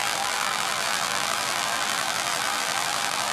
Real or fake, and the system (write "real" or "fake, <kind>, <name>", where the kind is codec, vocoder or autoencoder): fake, vocoder, BigVGAN v2